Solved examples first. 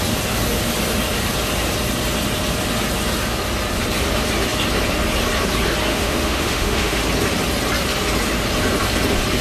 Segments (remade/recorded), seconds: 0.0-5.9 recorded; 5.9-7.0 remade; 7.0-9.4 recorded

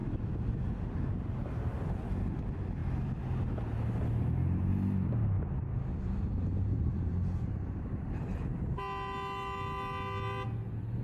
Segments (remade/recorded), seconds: 0.0-6.7 recorded; 6.7-8.2 remade; 8.2-11.0 recorded

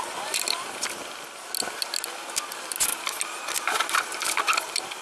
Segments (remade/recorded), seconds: 0.0-5.0 recorded

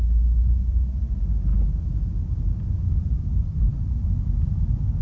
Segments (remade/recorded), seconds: 0.0-5.0 recorded

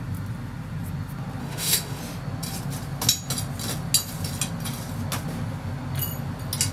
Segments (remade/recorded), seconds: 0.0-1.4 recorded; 1.4-2.0 remade; 2.0-6.7 recorded

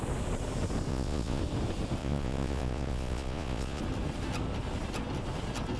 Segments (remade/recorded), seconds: 0.0-0.9 recorded; 0.9-1.4 remade; 1.4-2.0 recorded; 2.0-3.8 remade; 3.8-5.8 recorded

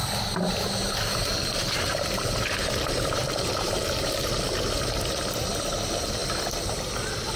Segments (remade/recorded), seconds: 0.0-4.2 remade; 4.2-7.4 recorded